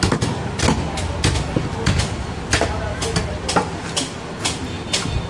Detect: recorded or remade recorded